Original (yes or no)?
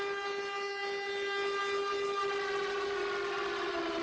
yes